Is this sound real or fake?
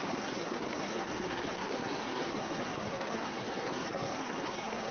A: fake